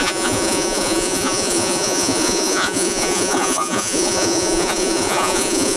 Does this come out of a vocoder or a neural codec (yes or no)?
yes